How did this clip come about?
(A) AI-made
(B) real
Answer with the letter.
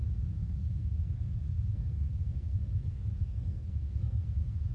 A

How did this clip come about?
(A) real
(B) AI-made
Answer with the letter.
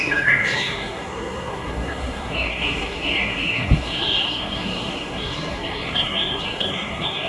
B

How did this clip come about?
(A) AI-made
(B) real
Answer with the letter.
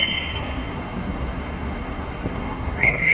A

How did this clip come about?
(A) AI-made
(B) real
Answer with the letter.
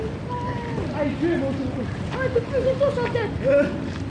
B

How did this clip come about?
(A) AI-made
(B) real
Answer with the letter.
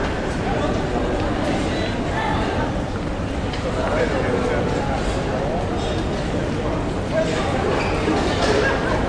B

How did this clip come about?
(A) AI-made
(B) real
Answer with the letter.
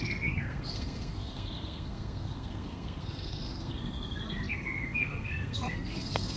A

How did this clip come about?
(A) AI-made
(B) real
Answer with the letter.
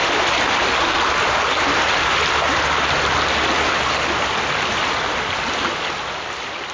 B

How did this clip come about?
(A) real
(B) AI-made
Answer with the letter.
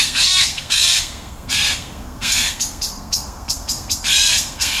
B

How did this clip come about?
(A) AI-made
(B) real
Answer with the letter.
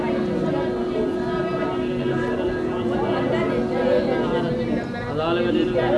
B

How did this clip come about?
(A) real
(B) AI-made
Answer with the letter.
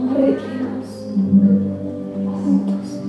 A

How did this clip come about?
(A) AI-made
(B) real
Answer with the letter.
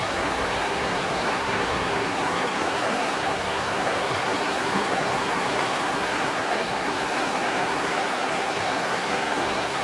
A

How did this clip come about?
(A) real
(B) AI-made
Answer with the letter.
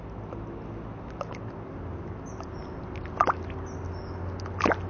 A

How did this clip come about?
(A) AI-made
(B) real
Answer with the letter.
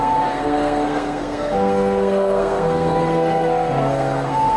A